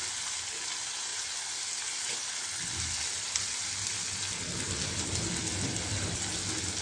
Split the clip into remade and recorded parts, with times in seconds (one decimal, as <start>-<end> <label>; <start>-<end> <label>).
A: 0.0-6.8 recorded